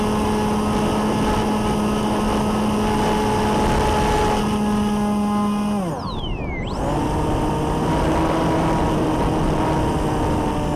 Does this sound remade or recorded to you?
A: recorded